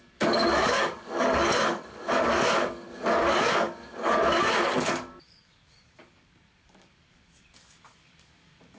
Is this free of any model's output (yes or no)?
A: no